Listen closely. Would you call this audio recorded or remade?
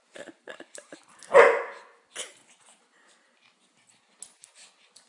recorded